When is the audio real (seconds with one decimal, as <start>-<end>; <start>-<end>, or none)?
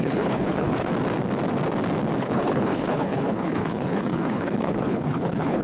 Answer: 0.9-2.2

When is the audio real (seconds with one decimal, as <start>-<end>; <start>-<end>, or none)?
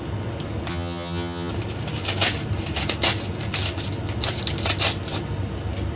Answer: 0.0-0.7; 1.5-6.0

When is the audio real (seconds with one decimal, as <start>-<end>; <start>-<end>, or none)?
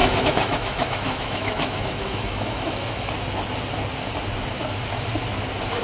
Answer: 3.1-5.8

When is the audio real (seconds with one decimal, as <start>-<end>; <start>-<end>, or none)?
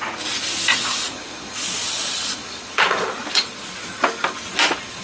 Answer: 0.0-0.7; 3.7-5.0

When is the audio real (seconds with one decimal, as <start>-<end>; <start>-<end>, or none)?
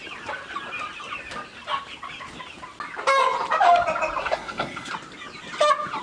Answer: 0.0-4.2; 4.9-6.0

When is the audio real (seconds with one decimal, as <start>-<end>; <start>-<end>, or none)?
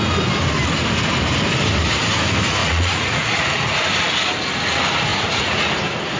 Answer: 0.0-2.6; 3.8-5.1; 5.7-6.2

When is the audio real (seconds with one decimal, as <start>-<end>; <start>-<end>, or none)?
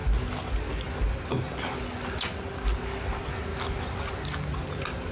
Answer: 0.0-5.1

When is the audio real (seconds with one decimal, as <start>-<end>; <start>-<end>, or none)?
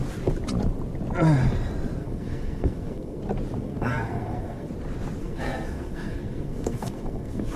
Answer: 0.0-2.0; 3.2-3.6; 4.7-5.2